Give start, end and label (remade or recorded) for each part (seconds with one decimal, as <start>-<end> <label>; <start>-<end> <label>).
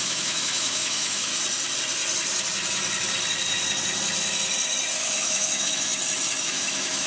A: 0.0-1.3 remade; 1.3-5.0 recorded; 5.0-5.9 remade; 5.9-6.4 recorded; 6.4-7.1 remade